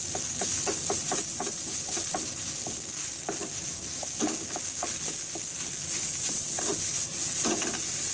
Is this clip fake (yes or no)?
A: no